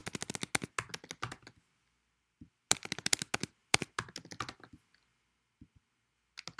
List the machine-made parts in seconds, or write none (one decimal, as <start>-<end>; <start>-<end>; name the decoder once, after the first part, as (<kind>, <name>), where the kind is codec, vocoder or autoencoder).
3.6-4.1 (vocoder, BigVGAN v2)